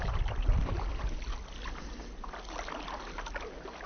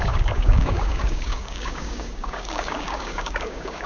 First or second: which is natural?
first